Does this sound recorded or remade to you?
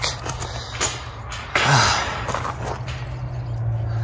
recorded